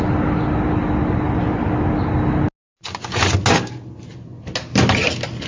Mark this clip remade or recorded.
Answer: recorded